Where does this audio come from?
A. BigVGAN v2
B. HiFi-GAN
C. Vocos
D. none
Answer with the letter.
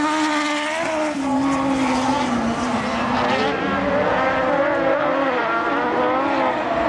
D